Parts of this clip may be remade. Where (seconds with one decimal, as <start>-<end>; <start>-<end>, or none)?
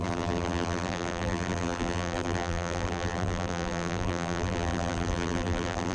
0.0-5.9